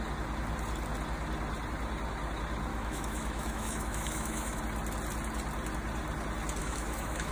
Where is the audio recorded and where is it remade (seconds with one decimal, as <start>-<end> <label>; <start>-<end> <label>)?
0.0-2.7 recorded; 2.7-4.6 remade; 4.6-6.6 recorded; 6.6-7.3 remade